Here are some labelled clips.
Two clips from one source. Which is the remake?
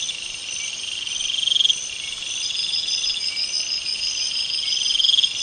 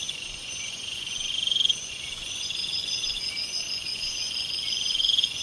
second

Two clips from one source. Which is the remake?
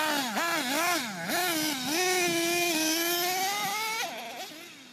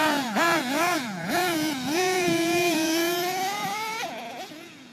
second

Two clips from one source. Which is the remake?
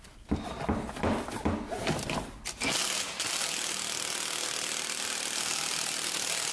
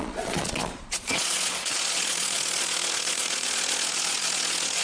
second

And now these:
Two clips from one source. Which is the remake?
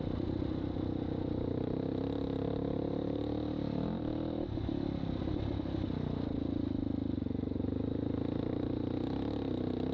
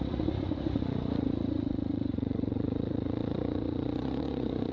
second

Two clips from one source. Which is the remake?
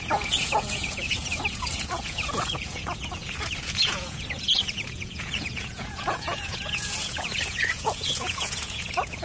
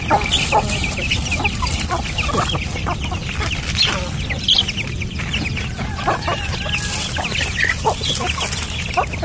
first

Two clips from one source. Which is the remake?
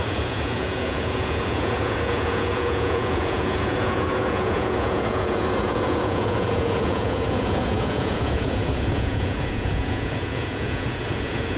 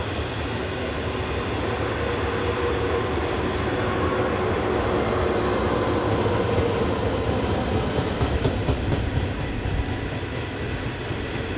first